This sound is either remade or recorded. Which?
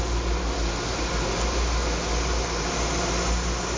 recorded